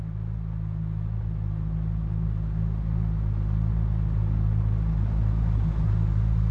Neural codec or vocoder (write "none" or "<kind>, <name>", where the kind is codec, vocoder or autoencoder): none